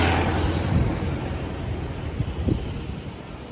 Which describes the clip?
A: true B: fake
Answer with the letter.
A